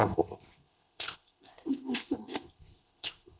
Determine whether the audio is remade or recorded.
remade